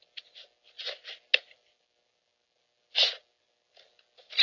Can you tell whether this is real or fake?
real